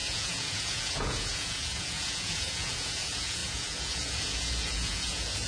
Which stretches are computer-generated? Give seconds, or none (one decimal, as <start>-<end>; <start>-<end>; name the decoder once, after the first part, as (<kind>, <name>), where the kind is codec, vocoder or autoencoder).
0.0-5.5 (vocoder, Vocos)